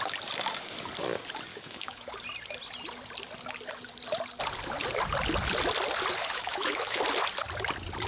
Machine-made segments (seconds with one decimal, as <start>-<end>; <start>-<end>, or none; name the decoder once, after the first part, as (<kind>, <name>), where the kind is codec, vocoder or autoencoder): 1.5-2.1 (autoencoder, DAC-VAE); 6.2-7.0